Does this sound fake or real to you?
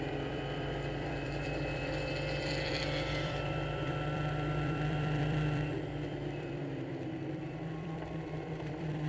fake